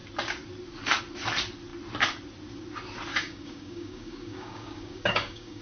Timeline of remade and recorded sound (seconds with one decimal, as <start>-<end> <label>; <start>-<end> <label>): 0.0-3.1 recorded; 3.1-5.6 remade